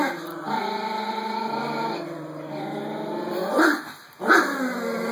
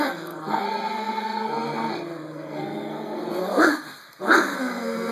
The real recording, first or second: first